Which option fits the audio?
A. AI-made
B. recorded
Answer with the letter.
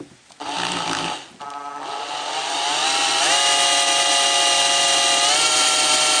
B